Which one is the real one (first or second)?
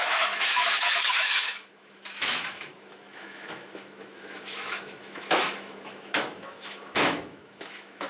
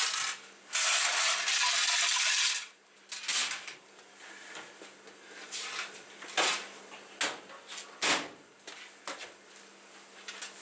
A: second